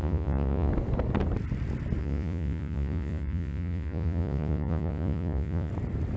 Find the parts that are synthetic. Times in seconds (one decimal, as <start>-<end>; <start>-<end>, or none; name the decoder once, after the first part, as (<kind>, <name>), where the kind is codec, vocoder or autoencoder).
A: 0.0-0.7 (vocoder, Vocos); 2.0-5.7